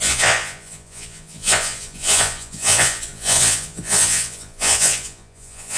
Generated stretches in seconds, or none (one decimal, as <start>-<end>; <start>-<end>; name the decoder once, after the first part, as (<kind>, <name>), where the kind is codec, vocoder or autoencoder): 0.0-5.8 (vocoder, Vocos)